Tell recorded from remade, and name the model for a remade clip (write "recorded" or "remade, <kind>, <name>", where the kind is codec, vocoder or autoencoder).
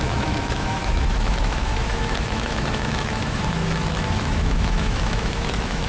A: remade, autoencoder, DAC-VAE